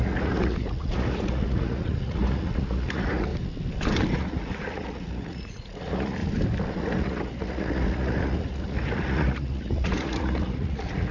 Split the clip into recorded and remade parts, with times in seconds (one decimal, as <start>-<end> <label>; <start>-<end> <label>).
0.0-3.3 remade; 3.3-4.1 recorded; 4.1-6.2 remade; 6.2-6.7 recorded; 6.7-11.1 remade